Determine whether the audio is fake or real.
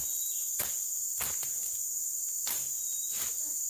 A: real